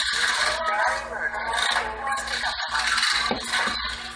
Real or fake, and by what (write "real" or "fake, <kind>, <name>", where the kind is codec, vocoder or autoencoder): real